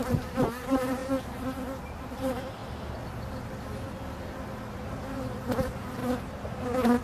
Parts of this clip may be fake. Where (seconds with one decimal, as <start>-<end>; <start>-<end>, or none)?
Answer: 0.0-1.0; 1.9-2.6; 5.6-6.0